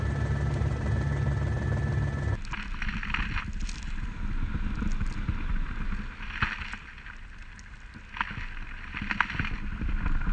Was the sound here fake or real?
real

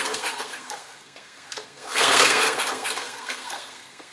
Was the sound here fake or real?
fake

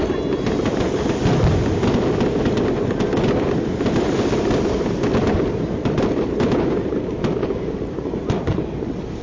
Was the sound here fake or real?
real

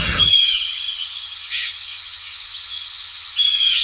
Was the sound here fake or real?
fake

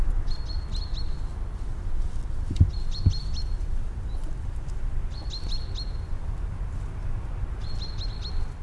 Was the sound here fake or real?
real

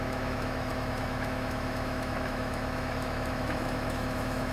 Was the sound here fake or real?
fake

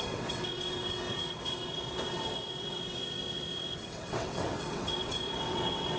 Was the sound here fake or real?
fake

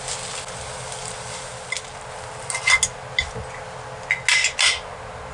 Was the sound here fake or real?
real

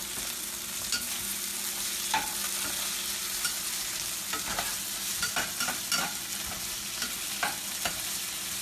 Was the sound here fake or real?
real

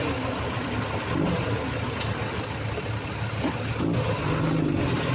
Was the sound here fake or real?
real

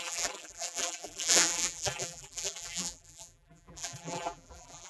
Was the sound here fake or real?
fake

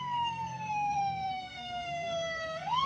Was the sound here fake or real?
fake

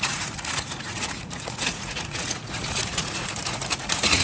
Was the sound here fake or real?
fake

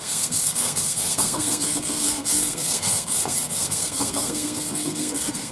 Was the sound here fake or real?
fake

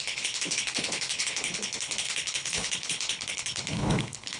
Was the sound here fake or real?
fake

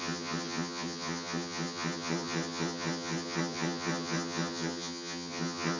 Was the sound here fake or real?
fake